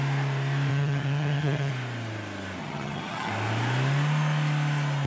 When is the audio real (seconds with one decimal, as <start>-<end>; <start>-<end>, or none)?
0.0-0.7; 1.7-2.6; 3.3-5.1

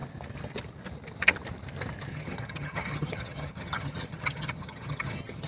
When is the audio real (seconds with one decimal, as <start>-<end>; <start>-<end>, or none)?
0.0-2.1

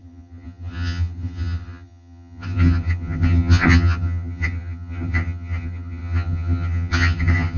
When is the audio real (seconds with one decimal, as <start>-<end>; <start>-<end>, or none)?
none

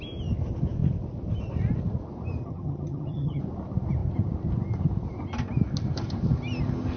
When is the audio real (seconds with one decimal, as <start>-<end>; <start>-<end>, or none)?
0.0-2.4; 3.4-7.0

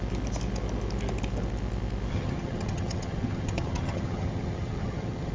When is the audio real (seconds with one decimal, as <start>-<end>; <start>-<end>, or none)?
0.0-2.1

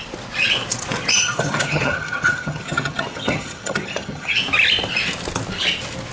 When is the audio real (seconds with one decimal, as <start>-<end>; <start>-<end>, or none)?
0.0-1.1; 4.4-6.1

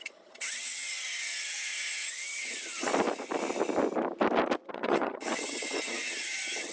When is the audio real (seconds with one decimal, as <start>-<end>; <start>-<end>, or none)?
2.9-4.7